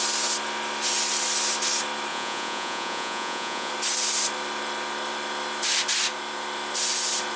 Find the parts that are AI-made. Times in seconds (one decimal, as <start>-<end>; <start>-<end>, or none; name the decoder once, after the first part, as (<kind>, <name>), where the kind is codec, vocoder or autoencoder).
2.1-3.7 (vocoder, Vocos)